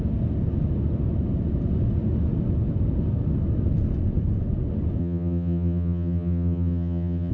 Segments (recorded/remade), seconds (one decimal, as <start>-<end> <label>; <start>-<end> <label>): 0.0-5.0 recorded; 5.0-7.3 remade